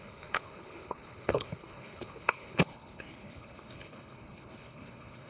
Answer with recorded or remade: remade